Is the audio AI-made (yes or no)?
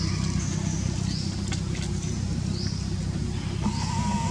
no